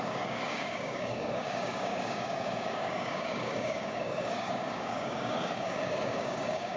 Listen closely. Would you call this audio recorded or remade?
remade